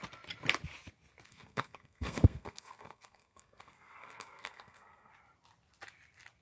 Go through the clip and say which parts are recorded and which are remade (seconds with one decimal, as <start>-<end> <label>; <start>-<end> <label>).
0.0-1.3 recorded; 1.3-5.1 remade; 5.1-6.4 recorded